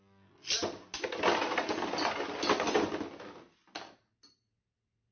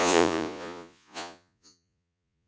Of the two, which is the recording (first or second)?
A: first